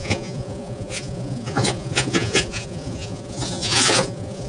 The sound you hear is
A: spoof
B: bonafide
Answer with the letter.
A